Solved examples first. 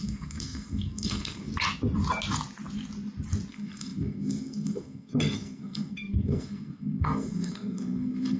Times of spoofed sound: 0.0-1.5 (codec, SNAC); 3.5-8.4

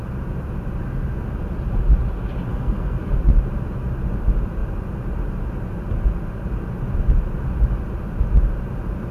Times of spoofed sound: 2.5-3.1 (codec, SNAC)

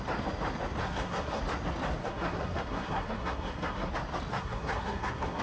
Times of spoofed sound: 0.8-1.4 (codec, SNAC); 2.0-3.9; 4.3-5.4

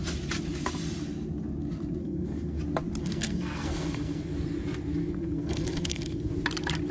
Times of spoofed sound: 2.0-2.6 (codec, SNAC); 3.0-4.3; 5.0-6.3

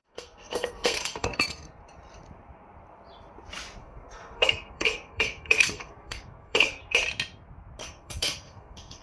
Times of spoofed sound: 0.0-1.8 (codec, SNAC); 3.8-6.8; 7.8-9.0

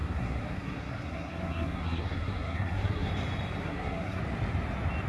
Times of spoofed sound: 0.0-3.1 (codec, SNAC); 3.6-4.2

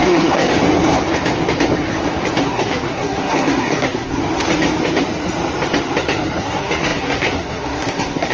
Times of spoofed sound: 0.0-0.5 (codec, SNAC); 2.4-4.2; 6.4-8.3